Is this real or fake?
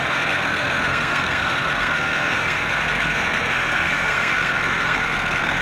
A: fake